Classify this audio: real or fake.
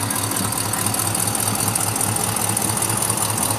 real